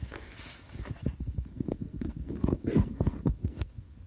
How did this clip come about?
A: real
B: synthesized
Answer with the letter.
B